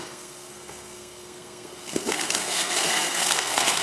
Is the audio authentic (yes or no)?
no